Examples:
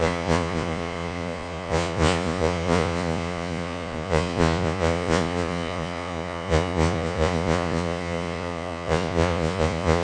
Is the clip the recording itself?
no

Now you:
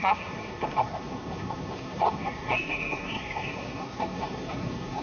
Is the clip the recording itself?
no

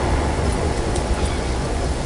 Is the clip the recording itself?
no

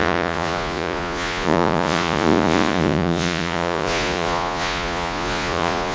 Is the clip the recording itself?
no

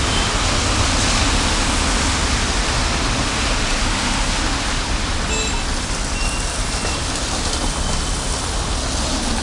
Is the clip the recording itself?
yes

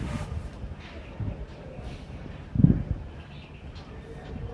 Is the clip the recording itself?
yes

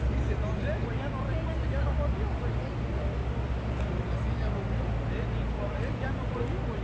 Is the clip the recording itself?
yes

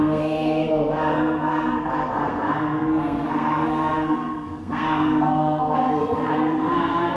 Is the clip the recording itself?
no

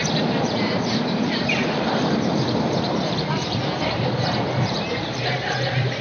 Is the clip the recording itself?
no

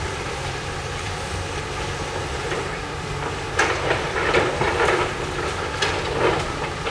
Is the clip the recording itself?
no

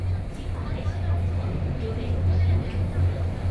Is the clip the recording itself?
yes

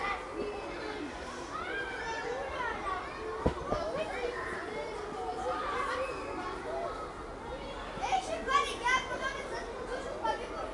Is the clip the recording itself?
yes